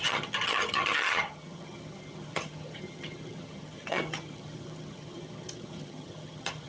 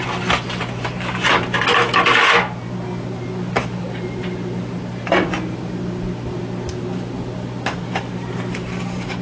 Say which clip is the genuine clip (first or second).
second